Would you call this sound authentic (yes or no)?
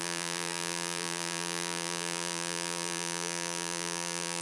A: no